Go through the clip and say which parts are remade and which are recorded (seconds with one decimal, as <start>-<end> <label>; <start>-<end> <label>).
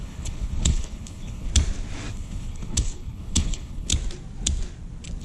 0.0-1.5 remade; 1.5-2.1 recorded; 2.1-3.9 remade; 3.9-5.2 recorded